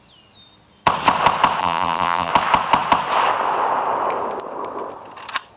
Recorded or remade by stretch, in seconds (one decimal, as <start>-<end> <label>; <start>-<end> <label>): 0.0-1.6 recorded; 1.6-2.3 remade; 2.3-5.6 recorded